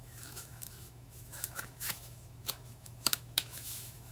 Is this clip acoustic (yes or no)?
no